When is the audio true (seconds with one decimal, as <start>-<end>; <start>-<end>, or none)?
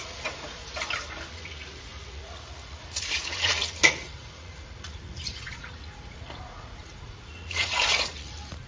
0.6-1.3